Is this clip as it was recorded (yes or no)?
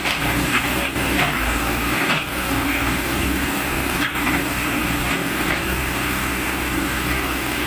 no